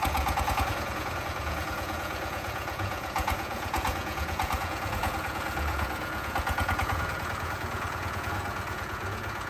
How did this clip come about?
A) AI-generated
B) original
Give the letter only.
A